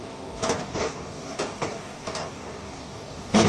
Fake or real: fake